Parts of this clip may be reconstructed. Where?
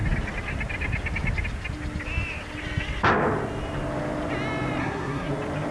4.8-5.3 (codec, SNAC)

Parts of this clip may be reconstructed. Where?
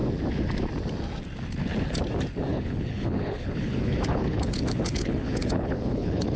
2.5-6.4 (codec, HILCodec)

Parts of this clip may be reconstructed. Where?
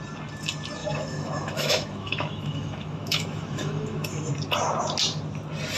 0.8-4.3 (autoencoder, DAC-VAE)